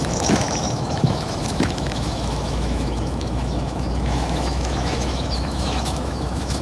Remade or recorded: remade